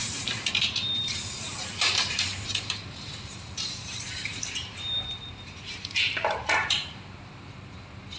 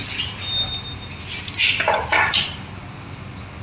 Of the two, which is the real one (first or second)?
second